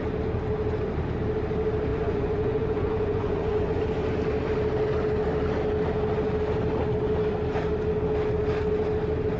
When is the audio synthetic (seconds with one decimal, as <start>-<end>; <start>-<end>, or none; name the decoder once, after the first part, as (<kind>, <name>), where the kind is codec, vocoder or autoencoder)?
1.9-3.8 (vocoder, Vocos)